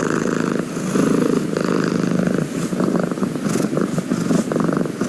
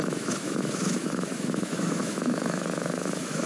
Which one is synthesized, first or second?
second